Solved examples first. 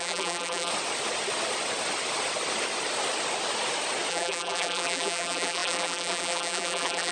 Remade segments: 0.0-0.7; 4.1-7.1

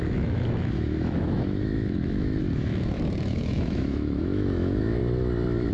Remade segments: 0.0-5.0

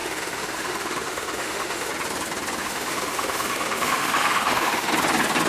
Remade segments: 0.0-1.9; 2.6-4.9

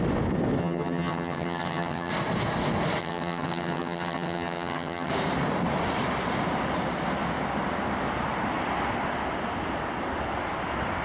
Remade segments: 0.6-2.1; 3.0-5.1